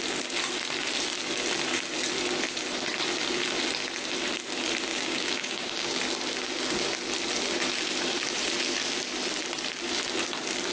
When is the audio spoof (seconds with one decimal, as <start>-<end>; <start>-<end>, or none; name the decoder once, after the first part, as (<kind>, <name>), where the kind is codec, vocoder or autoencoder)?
4.9-6.0 (codec, DAC)